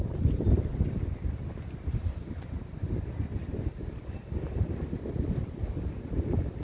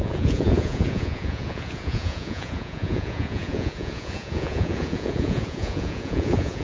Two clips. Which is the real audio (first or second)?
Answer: first